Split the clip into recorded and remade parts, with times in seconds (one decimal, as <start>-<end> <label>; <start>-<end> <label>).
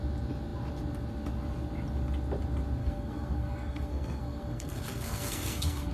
0.0-2.8 recorded; 2.8-5.9 remade